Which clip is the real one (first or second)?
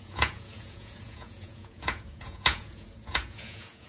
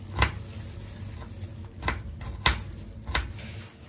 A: second